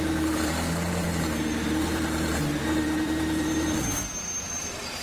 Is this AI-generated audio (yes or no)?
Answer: yes